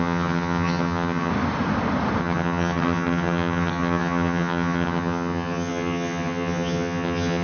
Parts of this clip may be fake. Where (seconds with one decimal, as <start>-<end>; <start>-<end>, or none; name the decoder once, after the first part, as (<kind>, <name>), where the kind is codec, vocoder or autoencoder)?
0.0-1.3 (vocoder, HiFi-GAN); 2.2-7.4